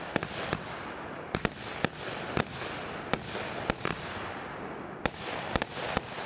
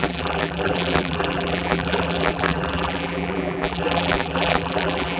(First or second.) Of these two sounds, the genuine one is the first